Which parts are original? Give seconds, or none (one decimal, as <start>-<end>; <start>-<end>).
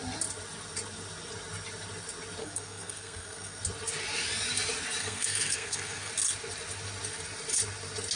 0.0-2.4; 3.6-5.0; 6.1-8.2